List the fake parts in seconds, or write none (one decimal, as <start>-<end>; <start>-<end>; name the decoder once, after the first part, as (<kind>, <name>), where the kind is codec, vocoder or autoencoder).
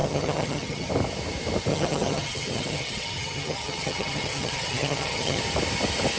0.0-0.9 (vocoder, HiFi-GAN); 1.7-5.4